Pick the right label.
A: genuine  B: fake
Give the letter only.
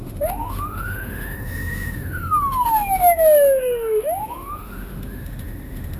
B